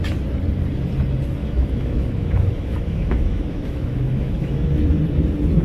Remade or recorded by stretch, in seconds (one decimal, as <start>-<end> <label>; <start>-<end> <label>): 0.0-1.4 recorded; 1.4-4.8 remade; 4.8-5.6 recorded